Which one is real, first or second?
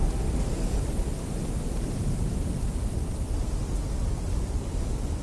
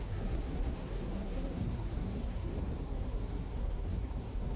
first